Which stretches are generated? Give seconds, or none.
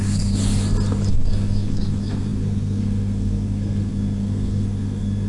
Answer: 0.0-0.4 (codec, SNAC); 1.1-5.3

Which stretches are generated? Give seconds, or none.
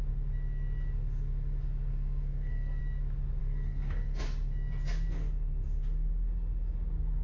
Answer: 1.9-2.8 (codec, SNAC); 3.4-4.2